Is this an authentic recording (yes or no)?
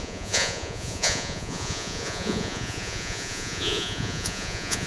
no